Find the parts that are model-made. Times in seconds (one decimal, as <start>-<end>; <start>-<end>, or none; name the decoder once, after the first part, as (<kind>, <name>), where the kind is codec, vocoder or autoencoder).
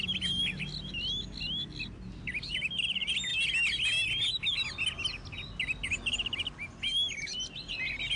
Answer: none